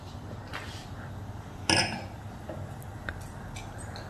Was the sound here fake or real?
real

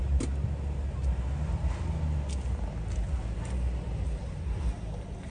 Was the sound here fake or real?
real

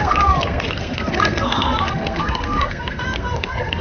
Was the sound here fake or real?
fake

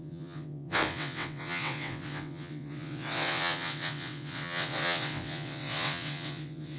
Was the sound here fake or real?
fake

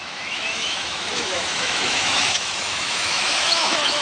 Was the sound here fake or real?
fake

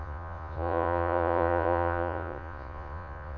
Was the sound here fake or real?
fake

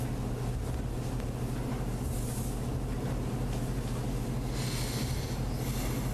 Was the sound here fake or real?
real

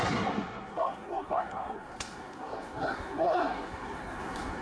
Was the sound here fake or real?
fake